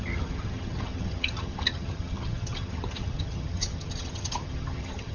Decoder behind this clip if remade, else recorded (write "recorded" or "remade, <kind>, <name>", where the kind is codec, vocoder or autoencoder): remade, vocoder, HiFi-GAN